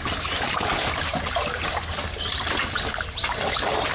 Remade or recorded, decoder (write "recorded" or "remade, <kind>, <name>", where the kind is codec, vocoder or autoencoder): recorded